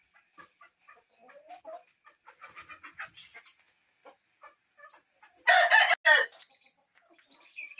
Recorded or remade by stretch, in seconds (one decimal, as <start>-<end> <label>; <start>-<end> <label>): 0.0-7.8 recorded